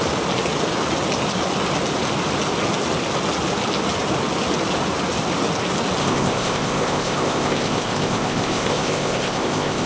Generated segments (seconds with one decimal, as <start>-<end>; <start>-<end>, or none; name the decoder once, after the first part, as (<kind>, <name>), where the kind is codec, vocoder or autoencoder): 6.0-9.9 (codec, ZipCodec)